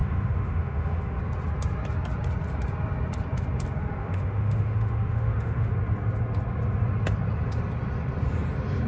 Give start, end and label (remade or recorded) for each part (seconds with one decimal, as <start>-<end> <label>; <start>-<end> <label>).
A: 0.0-1.2 remade; 1.2-4.0 recorded; 4.0-5.7 remade; 5.7-8.9 recorded